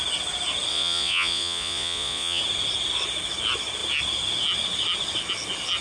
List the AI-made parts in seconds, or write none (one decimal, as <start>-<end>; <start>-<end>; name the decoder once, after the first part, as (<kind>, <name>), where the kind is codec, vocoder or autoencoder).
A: 0.7-2.4 (vocoder, Vocos)